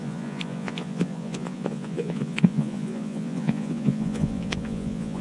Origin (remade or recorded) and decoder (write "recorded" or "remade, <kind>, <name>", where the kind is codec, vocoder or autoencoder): remade, vocoder, Vocos